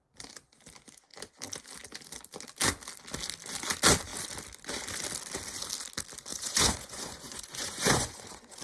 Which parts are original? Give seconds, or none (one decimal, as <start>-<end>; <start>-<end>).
0.0-6.3